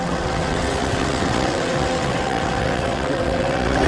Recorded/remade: remade